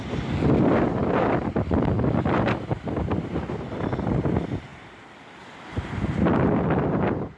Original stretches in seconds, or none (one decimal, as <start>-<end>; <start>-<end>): 0.0-1.0; 2.8-4.7